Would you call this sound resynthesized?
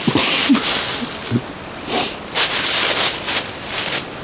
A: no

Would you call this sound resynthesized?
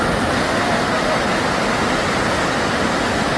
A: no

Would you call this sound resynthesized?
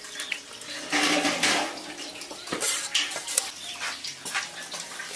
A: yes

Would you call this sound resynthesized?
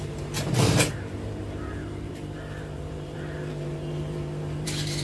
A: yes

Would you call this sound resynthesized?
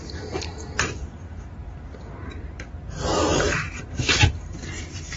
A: yes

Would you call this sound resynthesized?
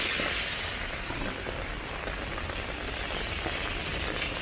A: yes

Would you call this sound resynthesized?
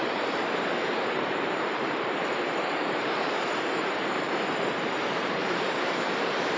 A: yes